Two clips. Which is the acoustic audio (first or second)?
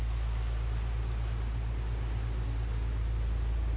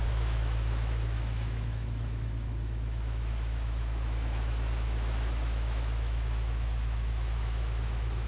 first